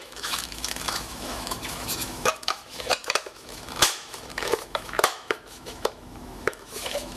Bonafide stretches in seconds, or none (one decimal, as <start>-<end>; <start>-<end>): none